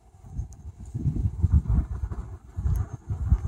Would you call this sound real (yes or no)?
yes